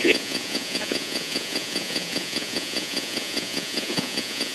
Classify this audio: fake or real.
fake